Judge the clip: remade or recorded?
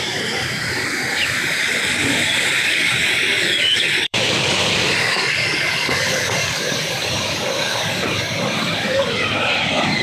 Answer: remade